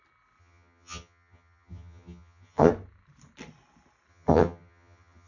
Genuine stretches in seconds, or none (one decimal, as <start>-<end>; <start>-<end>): 0.0-0.4; 2.7-4.1